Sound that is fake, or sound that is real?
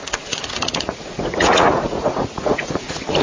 fake